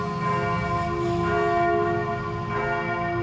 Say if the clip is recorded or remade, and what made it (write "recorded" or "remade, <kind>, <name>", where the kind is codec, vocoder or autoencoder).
recorded